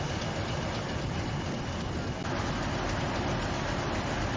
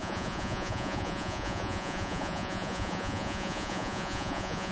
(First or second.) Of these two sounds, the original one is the first